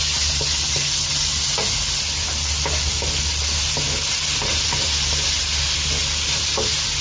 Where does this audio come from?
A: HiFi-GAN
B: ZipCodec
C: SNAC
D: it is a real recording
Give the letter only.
D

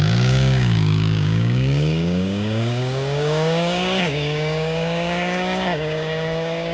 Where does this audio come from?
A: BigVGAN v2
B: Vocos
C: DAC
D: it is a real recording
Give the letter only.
C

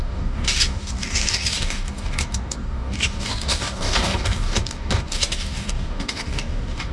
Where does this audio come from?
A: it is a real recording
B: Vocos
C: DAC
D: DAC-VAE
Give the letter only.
C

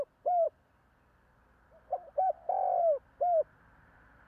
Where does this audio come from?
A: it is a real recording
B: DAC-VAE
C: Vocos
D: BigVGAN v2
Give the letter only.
D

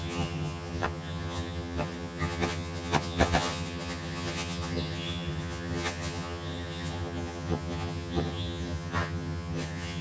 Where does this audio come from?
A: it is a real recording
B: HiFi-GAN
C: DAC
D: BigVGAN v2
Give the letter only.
B